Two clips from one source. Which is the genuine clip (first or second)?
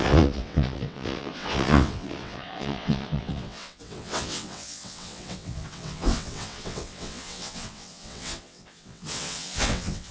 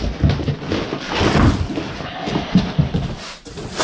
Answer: second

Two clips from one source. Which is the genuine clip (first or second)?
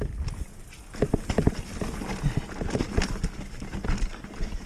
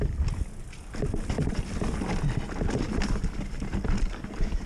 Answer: first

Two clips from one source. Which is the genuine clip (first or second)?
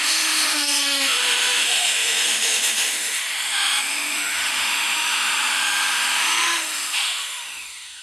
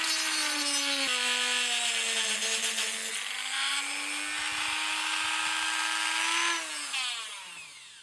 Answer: second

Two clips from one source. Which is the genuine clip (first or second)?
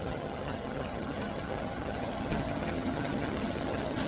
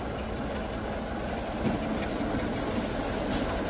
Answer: second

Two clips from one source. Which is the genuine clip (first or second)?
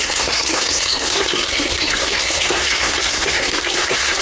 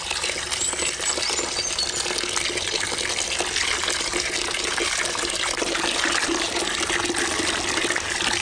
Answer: second